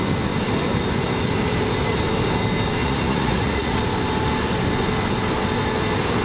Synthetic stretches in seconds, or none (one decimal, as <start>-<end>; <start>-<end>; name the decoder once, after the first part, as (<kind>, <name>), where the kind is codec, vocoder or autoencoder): 2.8-3.8 (vocoder, Vocos)